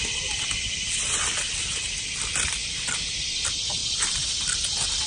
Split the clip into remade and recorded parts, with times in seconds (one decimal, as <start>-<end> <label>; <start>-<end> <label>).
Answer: 0.0-2.2 remade; 2.2-2.6 recorded; 2.6-3.2 remade; 3.2-5.1 recorded